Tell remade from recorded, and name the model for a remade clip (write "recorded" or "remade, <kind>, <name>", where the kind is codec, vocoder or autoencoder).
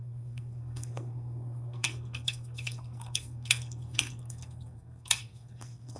remade, codec, SNAC